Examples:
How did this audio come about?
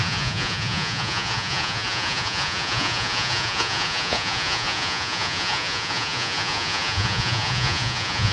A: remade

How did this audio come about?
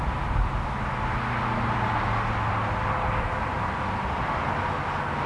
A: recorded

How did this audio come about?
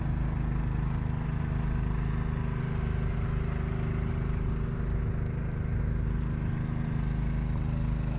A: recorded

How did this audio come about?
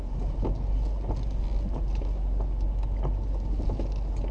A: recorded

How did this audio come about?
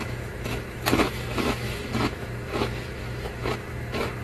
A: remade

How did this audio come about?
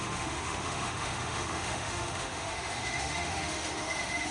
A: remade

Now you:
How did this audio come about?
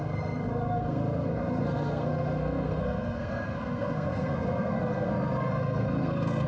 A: remade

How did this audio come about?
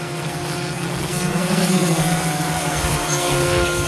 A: remade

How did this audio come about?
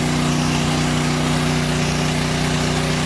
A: recorded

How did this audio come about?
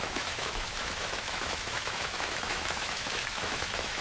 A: remade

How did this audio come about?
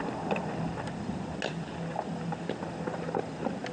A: recorded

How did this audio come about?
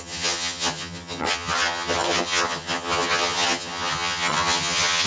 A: remade